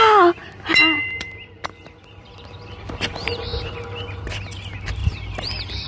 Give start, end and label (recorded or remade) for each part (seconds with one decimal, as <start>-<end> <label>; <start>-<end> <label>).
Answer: 0.0-0.4 recorded; 0.4-3.1 remade; 3.1-5.0 recorded; 5.0-5.9 remade